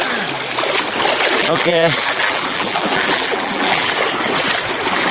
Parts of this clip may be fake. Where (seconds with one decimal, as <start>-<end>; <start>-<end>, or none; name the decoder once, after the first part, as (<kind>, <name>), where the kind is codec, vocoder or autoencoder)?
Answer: 1.4-3.9 (vocoder, BigVGAN v2)